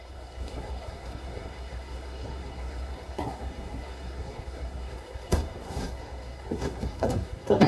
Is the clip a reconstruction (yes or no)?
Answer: yes